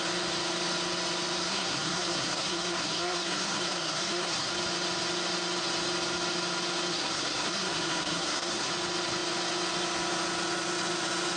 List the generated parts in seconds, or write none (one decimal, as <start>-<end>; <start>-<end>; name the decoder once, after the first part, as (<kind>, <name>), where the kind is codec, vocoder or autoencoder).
1.4-4.5 (codec, SNAC); 6.9-8.7